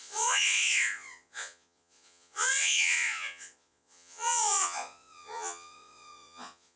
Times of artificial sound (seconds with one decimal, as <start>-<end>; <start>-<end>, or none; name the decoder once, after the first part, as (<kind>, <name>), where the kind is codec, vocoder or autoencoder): 0.0-6.8 (vocoder, Vocos)

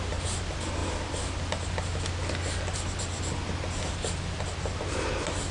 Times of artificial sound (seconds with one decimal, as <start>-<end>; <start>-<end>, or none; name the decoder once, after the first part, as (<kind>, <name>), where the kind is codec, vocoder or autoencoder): none